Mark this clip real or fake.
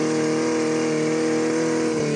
real